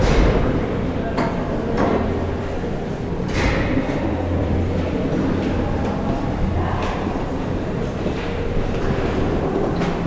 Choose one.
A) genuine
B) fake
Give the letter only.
B